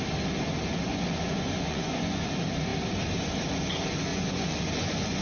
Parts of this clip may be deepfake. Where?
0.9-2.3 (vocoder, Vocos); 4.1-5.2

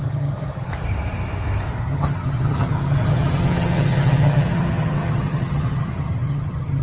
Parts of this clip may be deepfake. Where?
0.0-0.7 (vocoder, HiFi-GAN); 1.8-6.8

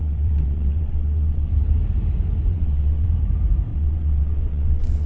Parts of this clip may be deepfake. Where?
0.0-1.5 (vocoder, WaveNeXt); 2.5-3.1; 3.7-5.1